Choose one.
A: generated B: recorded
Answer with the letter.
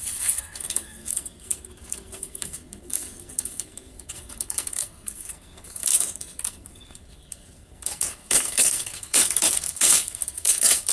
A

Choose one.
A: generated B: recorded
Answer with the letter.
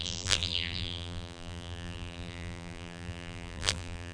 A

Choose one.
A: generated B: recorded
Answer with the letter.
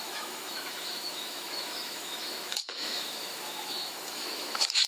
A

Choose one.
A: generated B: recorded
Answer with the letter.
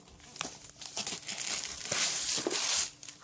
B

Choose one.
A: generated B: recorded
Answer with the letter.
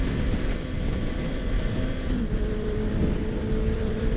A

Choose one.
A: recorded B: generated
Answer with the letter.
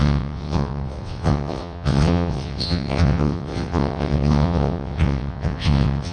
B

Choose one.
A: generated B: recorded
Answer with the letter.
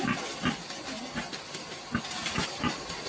B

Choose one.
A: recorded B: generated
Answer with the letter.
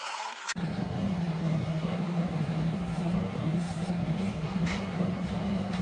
B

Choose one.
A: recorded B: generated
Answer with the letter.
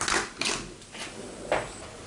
A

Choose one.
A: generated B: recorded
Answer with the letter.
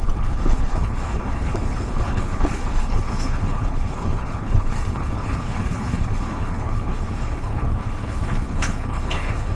A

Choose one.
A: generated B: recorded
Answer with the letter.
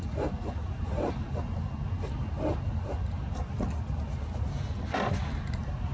B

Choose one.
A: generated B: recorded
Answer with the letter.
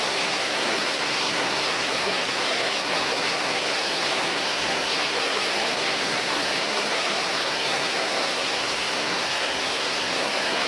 A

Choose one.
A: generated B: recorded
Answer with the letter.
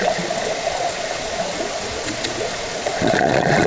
A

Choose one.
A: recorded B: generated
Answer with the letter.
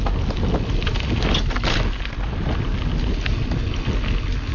A